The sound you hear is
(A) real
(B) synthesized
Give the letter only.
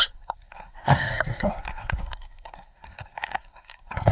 B